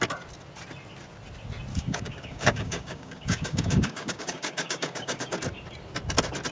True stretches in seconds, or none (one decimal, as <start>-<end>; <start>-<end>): 0.0-1.7; 5.4-6.5